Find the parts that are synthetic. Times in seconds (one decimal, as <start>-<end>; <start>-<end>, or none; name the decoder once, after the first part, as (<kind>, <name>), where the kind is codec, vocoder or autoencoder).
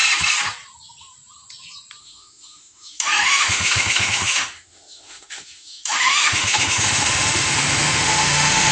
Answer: 2.0-8.7 (autoencoder, DAC-VAE)